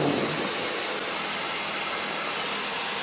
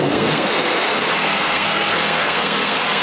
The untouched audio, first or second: first